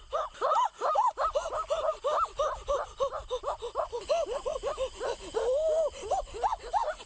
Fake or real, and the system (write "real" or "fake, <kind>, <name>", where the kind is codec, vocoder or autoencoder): real